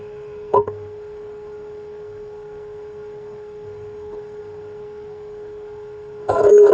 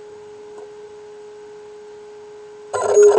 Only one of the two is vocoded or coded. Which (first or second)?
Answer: first